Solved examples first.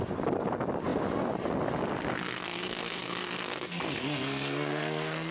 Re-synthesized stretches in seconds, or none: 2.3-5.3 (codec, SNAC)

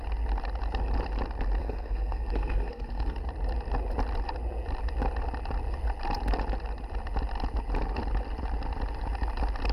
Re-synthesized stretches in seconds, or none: 1.6-3.2 (codec, SNAC)

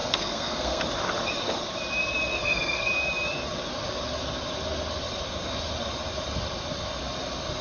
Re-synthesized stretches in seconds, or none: 0.0-0.8 (codec, SNAC); 2.3-2.8

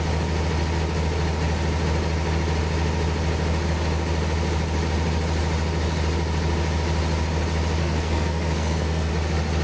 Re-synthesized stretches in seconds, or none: 7.8-9.1 (codec, SNAC)

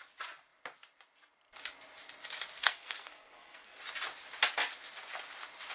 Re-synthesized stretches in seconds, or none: 2.6-3.8 (codec, SNAC)

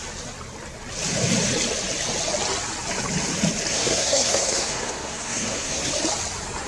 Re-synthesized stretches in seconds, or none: 3.7-5.9 (codec, SNAC)

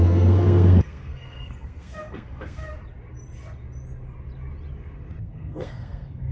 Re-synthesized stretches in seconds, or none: 0.0-2.6 (codec, SNAC); 5.2-6.3